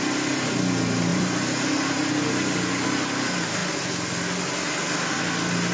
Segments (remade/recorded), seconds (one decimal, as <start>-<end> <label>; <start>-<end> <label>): 0.0-1.1 recorded; 1.1-2.1 remade; 2.1-5.7 recorded

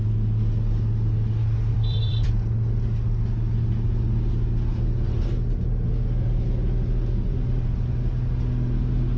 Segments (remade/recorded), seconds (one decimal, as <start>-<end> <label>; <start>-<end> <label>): 0.0-1.7 recorded; 1.7-2.3 remade; 2.3-9.2 recorded

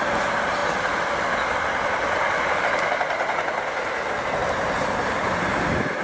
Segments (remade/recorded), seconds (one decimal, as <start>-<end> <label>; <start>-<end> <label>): 0.0-4.4 recorded; 4.4-6.0 remade

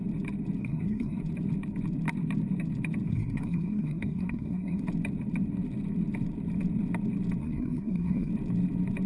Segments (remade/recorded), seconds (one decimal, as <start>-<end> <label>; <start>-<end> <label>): 0.0-0.6 recorded; 0.6-1.2 remade; 1.2-3.1 recorded; 3.1-4.8 remade; 4.8-7.4 recorded; 7.4-8.3 remade; 8.3-9.1 recorded

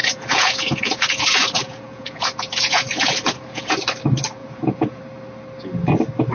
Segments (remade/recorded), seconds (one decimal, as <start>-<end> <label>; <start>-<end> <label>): 0.0-3.8 remade; 3.8-4.4 recorded; 4.4-5.0 remade; 5.0-6.3 recorded

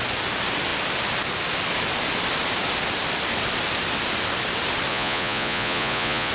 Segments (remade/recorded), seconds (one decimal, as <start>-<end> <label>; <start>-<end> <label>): 0.0-4.9 recorded; 4.9-6.3 remade